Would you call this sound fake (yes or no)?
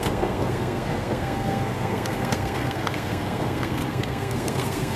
yes